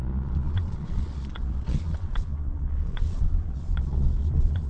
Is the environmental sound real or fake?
fake